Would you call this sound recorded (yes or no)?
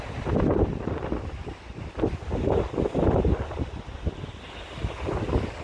yes